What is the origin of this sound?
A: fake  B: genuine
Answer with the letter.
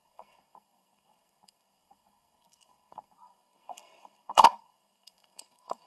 A